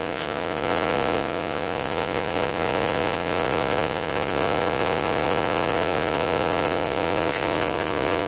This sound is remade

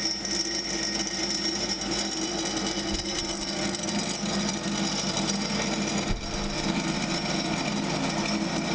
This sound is recorded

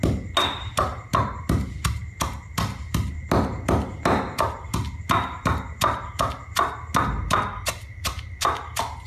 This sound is recorded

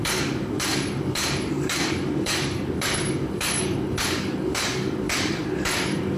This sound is remade